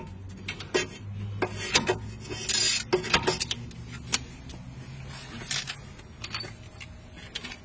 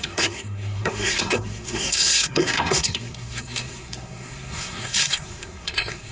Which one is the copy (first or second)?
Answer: second